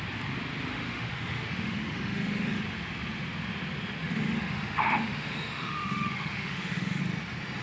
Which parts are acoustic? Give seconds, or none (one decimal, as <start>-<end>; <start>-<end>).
0.0-0.7; 2.6-4.0; 7.0-7.6